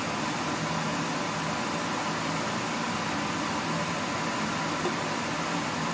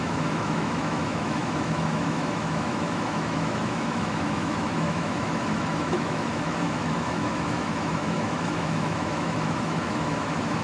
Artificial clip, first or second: second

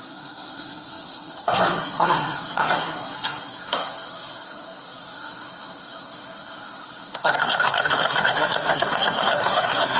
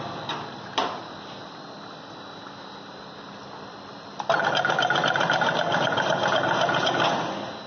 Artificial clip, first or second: first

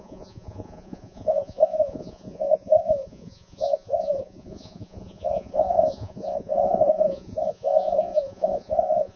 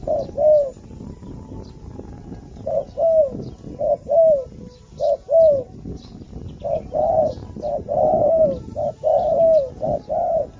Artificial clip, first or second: first